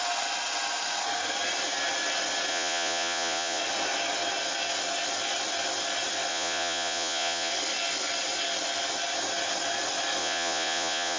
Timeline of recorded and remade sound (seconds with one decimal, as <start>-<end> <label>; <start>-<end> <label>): 0.0-2.5 recorded; 2.5-3.6 remade; 3.6-6.3 recorded; 6.3-7.5 remade; 7.5-10.2 recorded; 10.2-11.2 remade